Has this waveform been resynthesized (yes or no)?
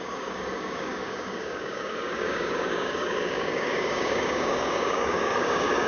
yes